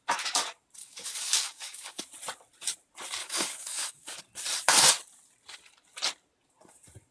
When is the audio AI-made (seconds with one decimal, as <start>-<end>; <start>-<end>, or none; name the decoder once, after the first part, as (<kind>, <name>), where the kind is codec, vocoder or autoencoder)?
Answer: 0.8-2.0 (codec, DAC); 3.2-4.2